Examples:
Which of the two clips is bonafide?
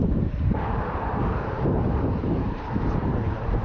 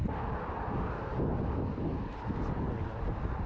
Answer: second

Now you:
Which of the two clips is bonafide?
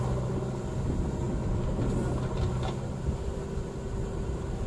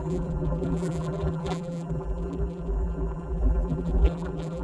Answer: first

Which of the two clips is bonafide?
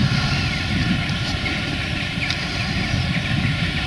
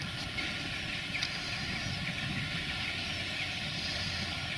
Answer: second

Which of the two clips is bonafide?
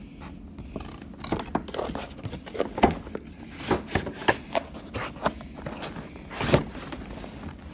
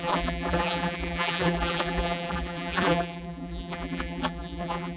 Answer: first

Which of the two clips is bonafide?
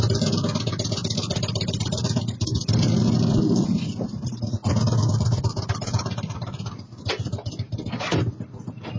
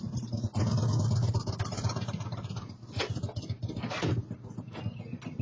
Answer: second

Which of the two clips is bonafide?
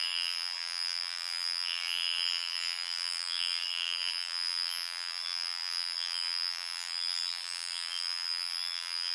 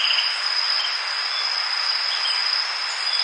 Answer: second